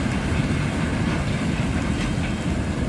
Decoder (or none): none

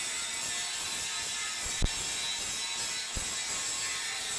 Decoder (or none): none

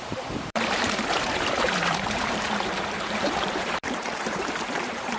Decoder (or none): vocoder, BigVGAN v2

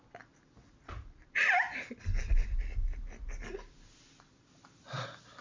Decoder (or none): none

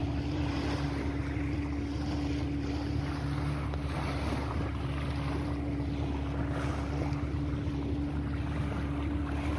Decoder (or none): none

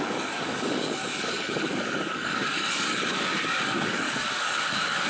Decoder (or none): codec, DAC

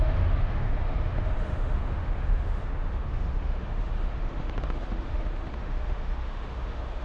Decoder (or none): autoencoder, DAC-VAE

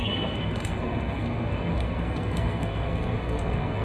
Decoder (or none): codec, SNAC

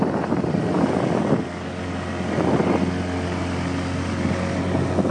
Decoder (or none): none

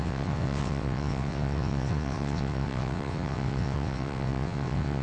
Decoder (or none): vocoder, WaveNeXt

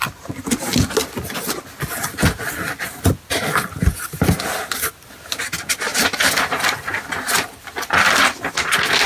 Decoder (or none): none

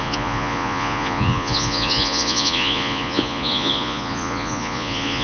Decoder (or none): vocoder, Vocos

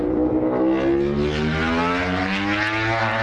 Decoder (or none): none